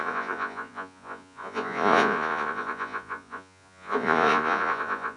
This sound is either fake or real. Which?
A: fake